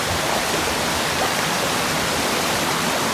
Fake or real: real